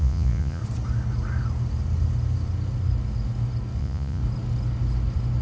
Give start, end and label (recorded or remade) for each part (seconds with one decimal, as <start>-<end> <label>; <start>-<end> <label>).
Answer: 0.0-0.6 remade; 0.6-3.8 recorded; 3.8-4.2 remade; 4.2-5.4 recorded